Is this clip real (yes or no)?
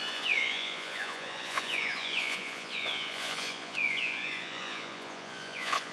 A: no